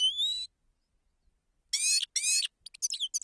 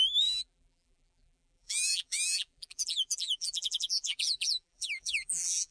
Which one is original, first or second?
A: first